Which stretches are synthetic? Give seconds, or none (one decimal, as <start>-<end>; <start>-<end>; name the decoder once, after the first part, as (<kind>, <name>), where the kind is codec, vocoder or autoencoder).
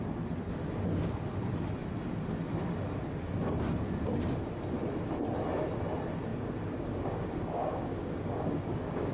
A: 6.3-9.1 (codec, DAC)